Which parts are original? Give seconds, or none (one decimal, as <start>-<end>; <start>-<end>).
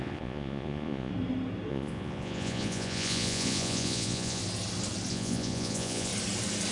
1.1-1.7; 4.4-5.1; 6.1-6.7